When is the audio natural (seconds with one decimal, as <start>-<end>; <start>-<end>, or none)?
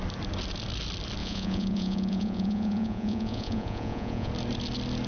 0.0-1.2; 4.3-5.1